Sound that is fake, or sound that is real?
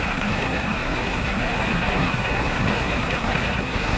fake